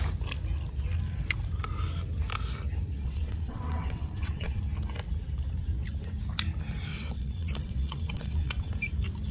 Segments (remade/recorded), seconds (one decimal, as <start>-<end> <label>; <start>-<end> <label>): 0.0-3.0 recorded; 3.0-4.6 remade; 4.6-6.9 recorded; 6.9-8.7 remade; 8.7-9.3 recorded